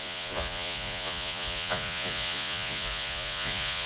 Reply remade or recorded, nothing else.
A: remade